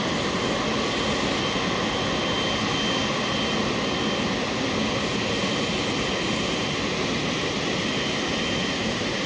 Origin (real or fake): real